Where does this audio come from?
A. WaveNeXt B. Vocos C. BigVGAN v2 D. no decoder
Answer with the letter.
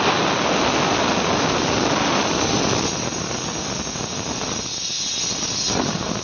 D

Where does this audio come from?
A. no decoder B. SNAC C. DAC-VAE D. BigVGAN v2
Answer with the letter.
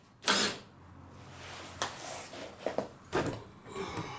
A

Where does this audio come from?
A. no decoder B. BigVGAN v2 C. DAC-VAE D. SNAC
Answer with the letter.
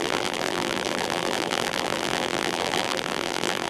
B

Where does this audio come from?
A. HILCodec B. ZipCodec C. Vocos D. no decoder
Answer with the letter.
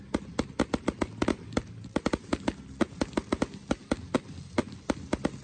D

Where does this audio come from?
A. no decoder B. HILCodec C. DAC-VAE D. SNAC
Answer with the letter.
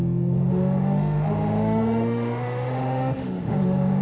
C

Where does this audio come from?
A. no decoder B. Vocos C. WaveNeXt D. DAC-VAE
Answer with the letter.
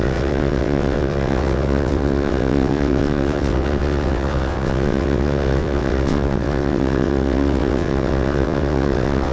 C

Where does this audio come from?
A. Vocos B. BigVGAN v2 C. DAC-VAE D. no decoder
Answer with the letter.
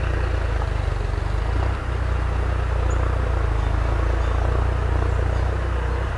D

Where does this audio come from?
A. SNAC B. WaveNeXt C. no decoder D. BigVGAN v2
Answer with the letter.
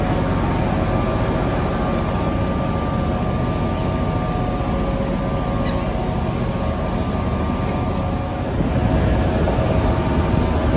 C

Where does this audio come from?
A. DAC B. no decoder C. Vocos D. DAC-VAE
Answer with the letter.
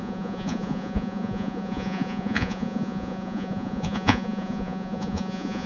C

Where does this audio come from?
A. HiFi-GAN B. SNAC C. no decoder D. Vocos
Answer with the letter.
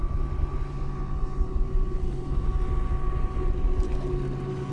C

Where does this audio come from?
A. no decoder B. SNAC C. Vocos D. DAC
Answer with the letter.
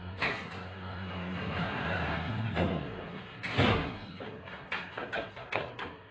B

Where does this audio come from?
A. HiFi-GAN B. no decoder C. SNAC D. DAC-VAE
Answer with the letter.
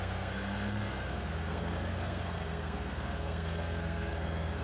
C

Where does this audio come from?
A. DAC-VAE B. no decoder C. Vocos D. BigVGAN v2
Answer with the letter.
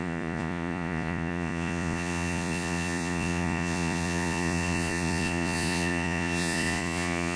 C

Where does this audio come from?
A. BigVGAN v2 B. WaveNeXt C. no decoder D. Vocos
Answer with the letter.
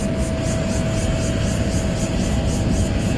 C